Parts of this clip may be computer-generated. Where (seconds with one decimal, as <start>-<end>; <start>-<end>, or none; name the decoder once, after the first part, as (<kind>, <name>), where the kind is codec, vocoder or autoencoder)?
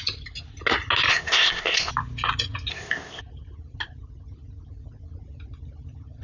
1.1-1.9 (codec, ZipCodec); 2.7-3.2